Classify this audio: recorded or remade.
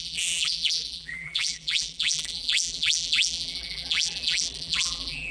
remade